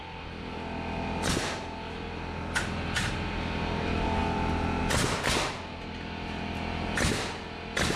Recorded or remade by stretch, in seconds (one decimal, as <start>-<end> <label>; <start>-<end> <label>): 0.0-8.0 recorded

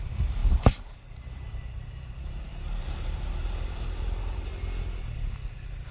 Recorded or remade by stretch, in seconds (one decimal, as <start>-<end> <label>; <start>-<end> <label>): 0.0-4.5 remade; 4.5-5.5 recorded; 5.5-5.9 remade

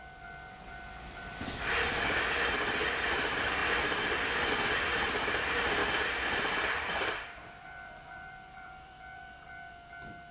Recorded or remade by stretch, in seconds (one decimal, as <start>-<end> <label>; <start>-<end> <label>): 0.0-5.8 recorded; 5.8-9.7 remade; 9.7-10.3 recorded

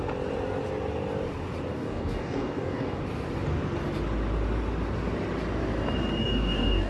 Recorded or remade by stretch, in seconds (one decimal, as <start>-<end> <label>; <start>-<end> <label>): 0.0-1.7 recorded; 1.7-3.0 remade; 3.0-6.2 recorded; 6.2-6.9 remade

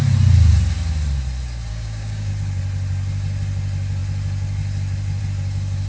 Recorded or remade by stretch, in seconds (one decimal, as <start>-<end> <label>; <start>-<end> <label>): 0.0-1.7 recorded; 1.7-2.3 remade; 2.3-5.9 recorded

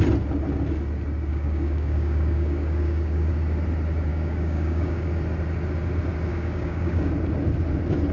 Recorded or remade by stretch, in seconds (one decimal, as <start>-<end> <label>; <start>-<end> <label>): 0.0-1.3 recorded; 1.3-3.3 remade; 3.3-4.1 recorded; 4.1-5.1 remade; 5.1-6.3 recorded; 6.3-7.1 remade; 7.1-8.1 recorded

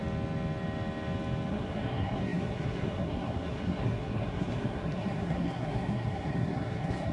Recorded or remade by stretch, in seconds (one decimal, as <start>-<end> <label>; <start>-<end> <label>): 0.0-1.5 recorded; 1.5-7.1 remade

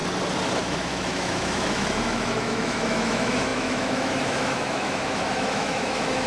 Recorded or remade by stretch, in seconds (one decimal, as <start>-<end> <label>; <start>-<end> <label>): 0.0-0.6 recorded; 0.6-6.3 remade